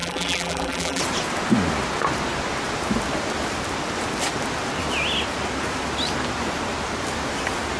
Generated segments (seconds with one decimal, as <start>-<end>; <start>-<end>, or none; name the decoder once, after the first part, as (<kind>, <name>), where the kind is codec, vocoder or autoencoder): 0.0-1.0 (vocoder, BigVGAN v2)